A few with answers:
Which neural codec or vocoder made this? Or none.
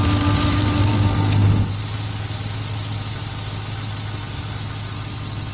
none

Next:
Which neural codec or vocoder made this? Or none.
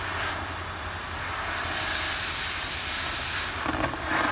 none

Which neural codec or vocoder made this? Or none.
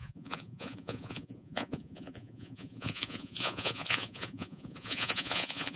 vocoder, Vocos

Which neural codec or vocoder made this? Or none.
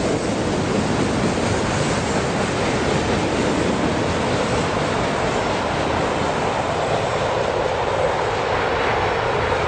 none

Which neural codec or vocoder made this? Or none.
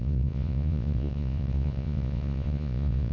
vocoder, Vocos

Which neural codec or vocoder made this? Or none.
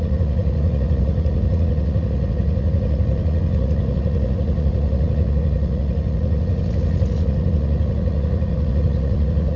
vocoder, Vocos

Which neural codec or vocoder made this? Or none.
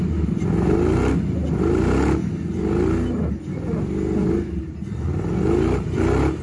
none